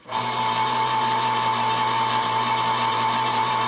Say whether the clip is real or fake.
fake